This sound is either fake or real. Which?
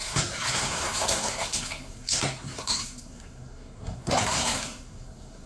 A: fake